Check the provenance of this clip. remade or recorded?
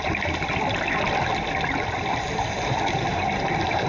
recorded